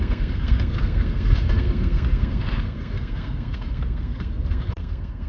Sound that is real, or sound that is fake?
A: fake